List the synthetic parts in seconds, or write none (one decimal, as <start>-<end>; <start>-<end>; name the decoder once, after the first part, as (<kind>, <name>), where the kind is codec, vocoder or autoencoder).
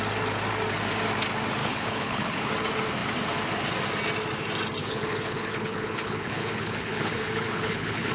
1.6-2.5 (codec, HILCodec); 4.8-8.1